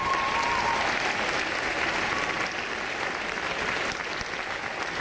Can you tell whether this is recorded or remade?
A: recorded